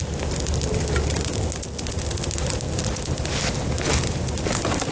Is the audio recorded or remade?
recorded